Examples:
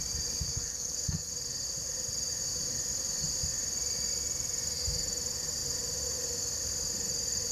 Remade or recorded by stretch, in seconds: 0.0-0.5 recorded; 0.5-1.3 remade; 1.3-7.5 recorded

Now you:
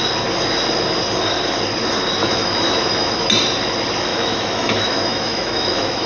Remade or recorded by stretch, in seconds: 0.0-2.2 recorded; 2.2-3.3 remade; 3.3-4.1 recorded; 4.1-6.1 remade